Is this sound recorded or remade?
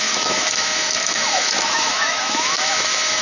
remade